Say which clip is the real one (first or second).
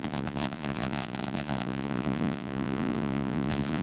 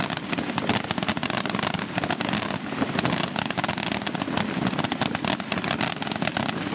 second